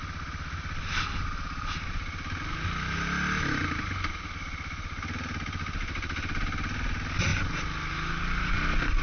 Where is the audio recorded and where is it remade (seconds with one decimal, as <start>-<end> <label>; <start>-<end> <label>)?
0.0-9.0 recorded